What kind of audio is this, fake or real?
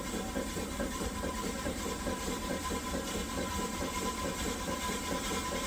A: fake